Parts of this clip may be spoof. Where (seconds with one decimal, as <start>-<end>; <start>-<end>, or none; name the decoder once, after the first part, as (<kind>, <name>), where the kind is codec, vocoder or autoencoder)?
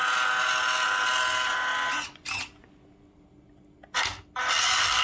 none